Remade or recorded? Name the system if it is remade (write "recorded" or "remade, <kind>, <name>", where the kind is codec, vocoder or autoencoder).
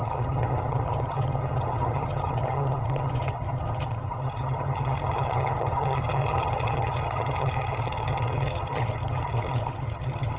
remade, vocoder, HiFi-GAN